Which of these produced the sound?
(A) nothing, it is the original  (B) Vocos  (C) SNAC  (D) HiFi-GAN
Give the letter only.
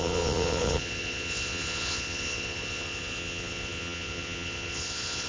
B